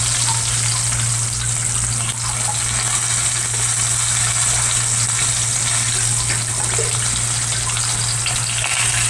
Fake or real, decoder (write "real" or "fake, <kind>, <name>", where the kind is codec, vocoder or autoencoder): real